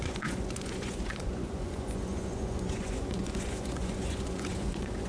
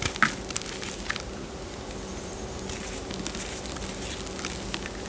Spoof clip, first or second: first